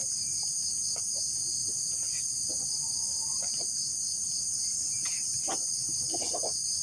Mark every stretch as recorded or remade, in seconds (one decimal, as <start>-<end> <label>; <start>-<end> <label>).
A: 0.0-0.7 remade; 0.7-4.2 recorded; 4.2-5.1 remade; 5.1-6.8 recorded